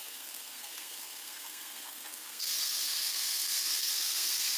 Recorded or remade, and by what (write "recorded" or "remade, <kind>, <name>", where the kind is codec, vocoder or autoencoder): remade, codec, SNAC